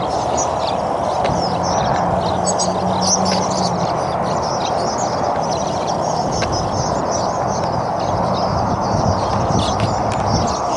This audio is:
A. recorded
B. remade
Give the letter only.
A